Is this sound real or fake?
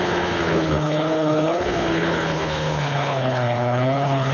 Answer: fake